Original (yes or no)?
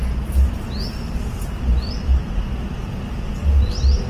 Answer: yes